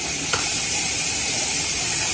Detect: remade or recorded remade